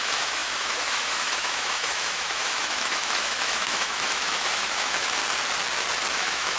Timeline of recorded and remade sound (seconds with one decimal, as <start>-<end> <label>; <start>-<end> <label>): 0.0-5.2 remade; 5.2-6.1 recorded; 6.1-6.6 remade